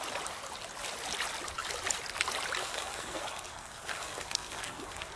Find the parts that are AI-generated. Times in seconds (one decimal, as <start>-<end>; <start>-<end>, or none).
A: 2.6-5.2